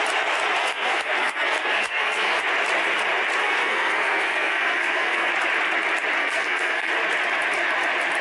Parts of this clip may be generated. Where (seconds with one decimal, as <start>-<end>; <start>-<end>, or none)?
0.6-2.4; 3.4-5.3; 6.2-6.9